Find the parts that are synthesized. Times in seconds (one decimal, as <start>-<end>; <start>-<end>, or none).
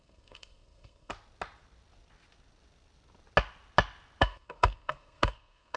0.0-1.1; 4.2-5.8